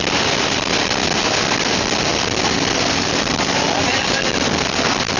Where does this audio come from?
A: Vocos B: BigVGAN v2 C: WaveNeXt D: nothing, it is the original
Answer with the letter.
B